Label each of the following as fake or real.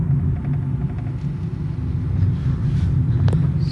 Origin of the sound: real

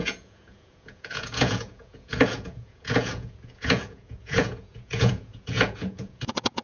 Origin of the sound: fake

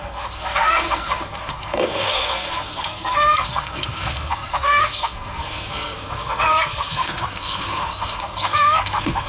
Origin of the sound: fake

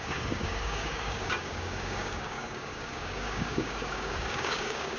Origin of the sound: fake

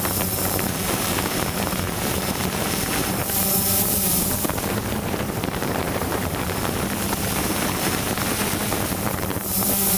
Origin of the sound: fake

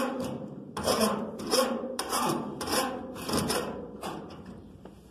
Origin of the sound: fake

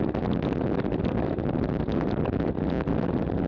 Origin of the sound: fake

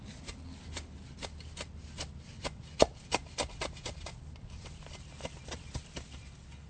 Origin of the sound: real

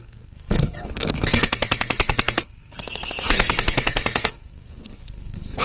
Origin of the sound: fake